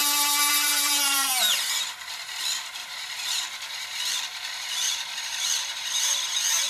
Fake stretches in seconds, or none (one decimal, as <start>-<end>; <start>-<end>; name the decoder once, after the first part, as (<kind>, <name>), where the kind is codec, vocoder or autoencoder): 0.5-6.7 (vocoder, BigVGAN v2)